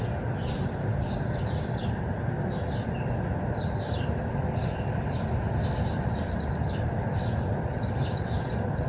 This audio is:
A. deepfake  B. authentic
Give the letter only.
B